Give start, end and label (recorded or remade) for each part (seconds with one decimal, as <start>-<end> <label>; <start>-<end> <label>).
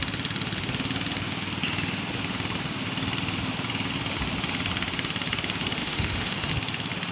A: 0.0-5.8 recorded; 5.8-6.5 remade; 6.5-7.1 recorded